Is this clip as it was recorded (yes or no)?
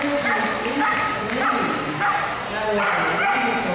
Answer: yes